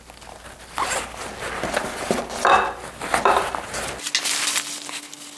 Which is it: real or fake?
real